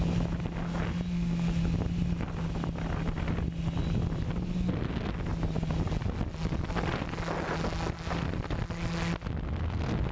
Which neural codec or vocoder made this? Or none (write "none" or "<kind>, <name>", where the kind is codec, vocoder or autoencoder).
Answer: none